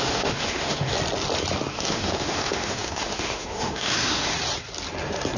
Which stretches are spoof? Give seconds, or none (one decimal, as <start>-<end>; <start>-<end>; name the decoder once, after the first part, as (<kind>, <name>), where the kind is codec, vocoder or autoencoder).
0.0-0.9 (autoencoder, DAC-VAE); 1.7-4.3